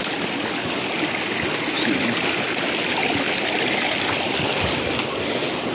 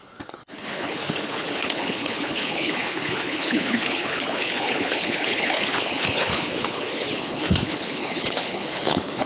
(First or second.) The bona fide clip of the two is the first